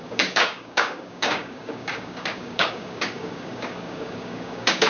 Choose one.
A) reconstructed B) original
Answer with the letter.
A